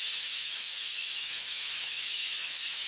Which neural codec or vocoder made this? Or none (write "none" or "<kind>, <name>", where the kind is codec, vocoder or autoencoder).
autoencoder, DAC-VAE